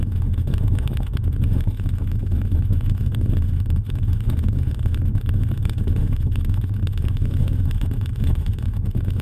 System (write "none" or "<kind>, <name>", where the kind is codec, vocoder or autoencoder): autoencoder, DAC-VAE